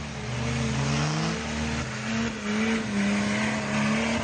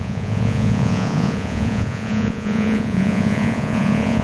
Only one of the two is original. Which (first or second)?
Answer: first